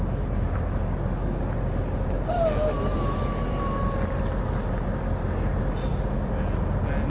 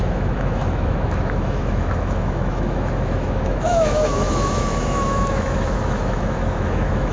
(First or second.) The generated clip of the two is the second